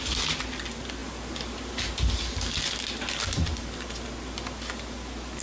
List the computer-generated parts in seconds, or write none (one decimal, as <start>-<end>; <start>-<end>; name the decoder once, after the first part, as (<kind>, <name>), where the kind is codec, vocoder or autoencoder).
1.0-1.8 (vocoder, BigVGAN v2)